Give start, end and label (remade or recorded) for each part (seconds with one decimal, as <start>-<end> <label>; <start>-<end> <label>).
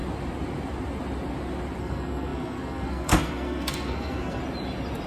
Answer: 0.0-1.8 recorded; 1.8-4.4 remade; 4.4-5.1 recorded